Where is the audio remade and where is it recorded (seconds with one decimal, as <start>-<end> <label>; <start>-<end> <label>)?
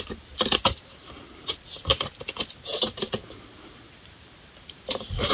0.0-1.9 remade; 1.9-2.8 recorded; 2.8-5.3 remade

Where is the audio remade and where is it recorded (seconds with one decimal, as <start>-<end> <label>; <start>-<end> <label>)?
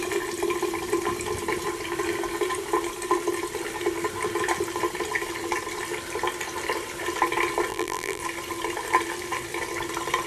0.0-7.7 recorded; 7.7-8.2 remade; 8.2-10.3 recorded